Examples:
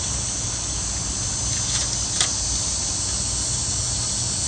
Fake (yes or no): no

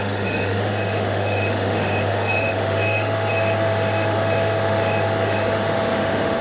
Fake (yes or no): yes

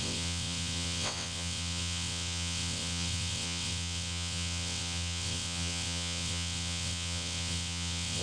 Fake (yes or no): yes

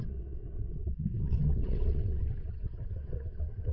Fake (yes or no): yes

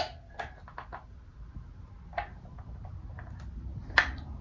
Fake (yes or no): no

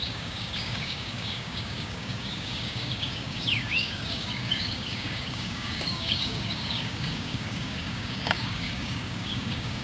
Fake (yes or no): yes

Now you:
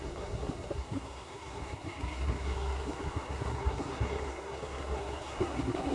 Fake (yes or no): yes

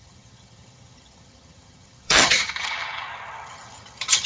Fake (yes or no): yes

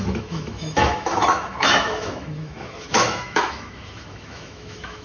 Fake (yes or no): yes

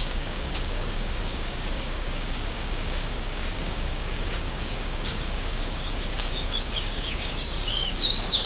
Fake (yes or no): yes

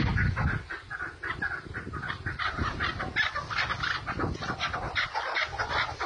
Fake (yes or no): no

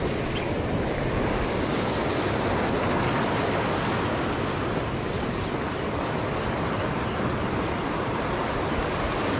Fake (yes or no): no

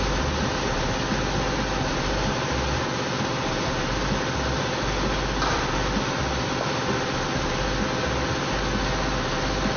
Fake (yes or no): no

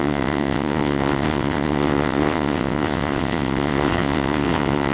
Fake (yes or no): yes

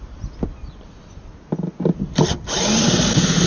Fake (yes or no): no